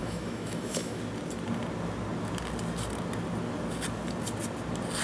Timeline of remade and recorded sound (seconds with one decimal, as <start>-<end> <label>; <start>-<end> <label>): 0.0-1.0 remade; 1.0-5.0 recorded